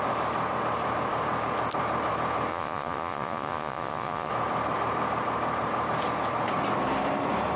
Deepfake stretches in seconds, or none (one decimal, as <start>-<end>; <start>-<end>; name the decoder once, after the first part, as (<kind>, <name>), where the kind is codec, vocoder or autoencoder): 2.5-4.3 (vocoder, Vocos)